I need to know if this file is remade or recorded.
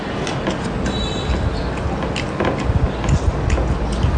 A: recorded